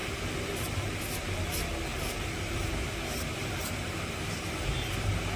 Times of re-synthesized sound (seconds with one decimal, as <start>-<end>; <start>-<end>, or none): 1.9-5.4